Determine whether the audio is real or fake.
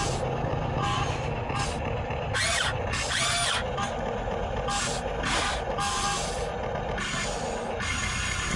real